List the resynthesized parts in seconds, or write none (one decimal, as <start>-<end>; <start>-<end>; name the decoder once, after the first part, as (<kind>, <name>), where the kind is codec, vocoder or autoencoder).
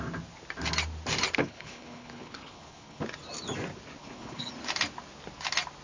1.4-3.0 (codec, HILCodec); 4.0-4.5